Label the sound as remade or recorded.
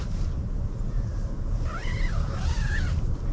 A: recorded